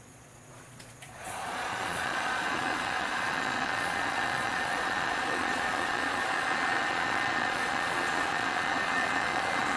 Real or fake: fake